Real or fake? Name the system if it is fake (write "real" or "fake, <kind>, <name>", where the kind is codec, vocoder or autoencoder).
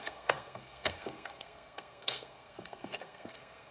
fake, codec, SNAC